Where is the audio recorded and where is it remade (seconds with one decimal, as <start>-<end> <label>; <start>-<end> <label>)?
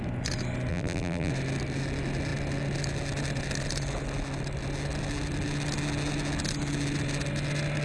0.0-0.7 recorded; 0.7-1.3 remade; 1.3-7.8 recorded